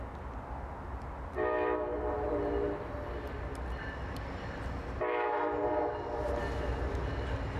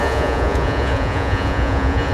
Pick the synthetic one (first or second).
second